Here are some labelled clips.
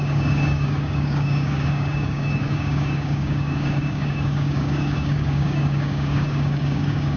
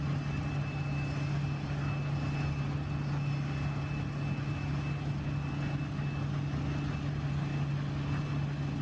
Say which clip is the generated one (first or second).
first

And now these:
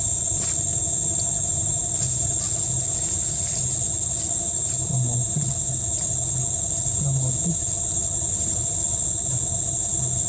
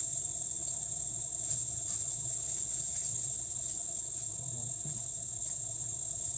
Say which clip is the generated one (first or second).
second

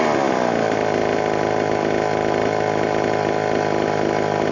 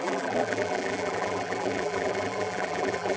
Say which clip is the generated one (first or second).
second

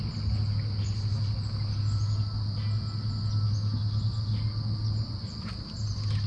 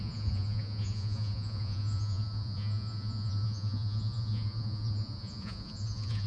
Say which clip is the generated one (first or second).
second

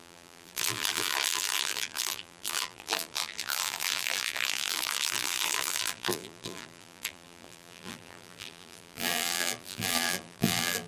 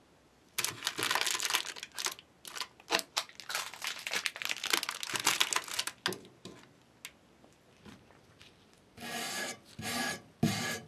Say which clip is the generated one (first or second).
first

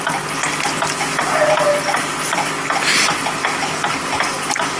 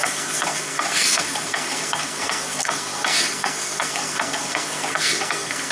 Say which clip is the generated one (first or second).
second